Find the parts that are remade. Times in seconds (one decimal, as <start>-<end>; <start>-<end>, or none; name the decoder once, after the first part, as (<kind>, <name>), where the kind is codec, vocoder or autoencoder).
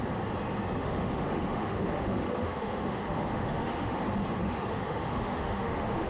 0.8-4.0 (autoencoder, DAC-VAE); 4.4-6.1